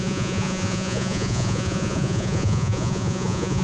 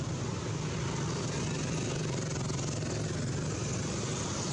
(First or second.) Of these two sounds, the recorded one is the second